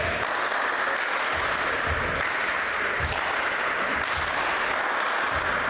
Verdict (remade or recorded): recorded